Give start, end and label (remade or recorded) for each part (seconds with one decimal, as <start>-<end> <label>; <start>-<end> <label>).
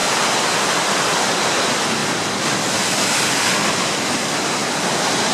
0.0-4.6 recorded; 4.6-5.3 remade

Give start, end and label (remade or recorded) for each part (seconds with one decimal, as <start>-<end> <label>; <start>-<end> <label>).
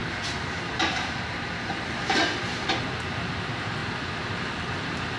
0.0-0.7 recorded; 0.7-3.8 remade; 3.8-4.7 recorded; 4.7-5.2 remade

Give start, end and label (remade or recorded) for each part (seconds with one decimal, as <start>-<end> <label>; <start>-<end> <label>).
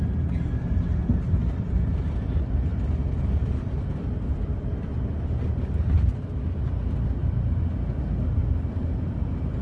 0.0-5.5 recorded; 5.5-6.1 remade; 6.1-9.6 recorded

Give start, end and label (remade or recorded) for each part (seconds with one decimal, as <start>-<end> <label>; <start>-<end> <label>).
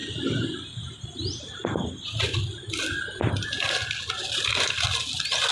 0.0-5.5 recorded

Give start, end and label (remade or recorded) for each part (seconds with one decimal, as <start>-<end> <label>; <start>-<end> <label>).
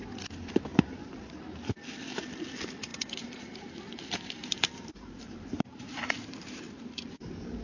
0.0-0.7 recorded; 0.7-1.2 remade; 1.2-2.9 recorded; 2.9-7.6 remade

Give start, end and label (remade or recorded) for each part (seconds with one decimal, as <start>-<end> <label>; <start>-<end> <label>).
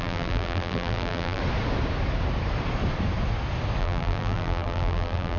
0.0-1.4 remade; 1.4-3.8 recorded; 3.8-5.4 remade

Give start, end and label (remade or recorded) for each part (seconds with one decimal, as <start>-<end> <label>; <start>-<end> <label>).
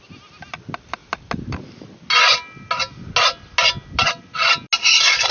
0.0-5.3 recorded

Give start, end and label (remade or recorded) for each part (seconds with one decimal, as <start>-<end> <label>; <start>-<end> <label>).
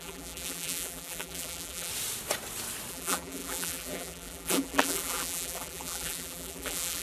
0.0-1.9 remade; 1.9-2.9 recorded; 2.9-7.0 remade